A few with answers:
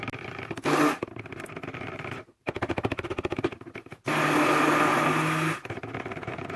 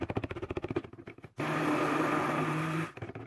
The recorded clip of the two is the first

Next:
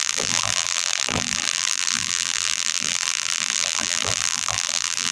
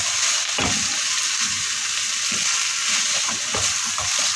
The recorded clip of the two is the second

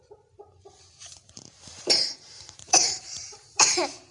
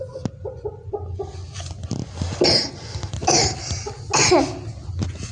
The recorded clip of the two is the second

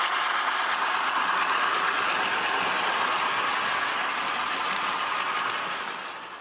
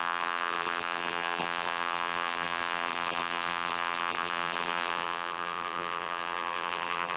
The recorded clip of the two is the first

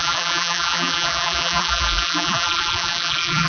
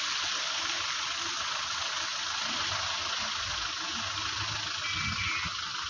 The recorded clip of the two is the second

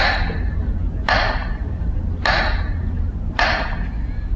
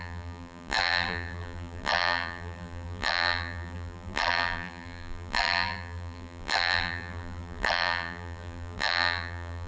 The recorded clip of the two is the first